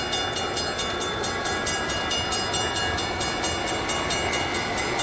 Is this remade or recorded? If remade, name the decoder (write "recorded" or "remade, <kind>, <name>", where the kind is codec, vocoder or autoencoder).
recorded